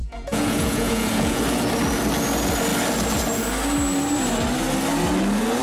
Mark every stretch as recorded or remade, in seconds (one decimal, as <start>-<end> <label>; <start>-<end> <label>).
0.0-1.4 remade; 1.4-5.6 recorded